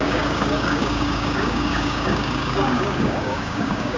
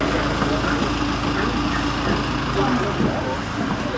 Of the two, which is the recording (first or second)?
second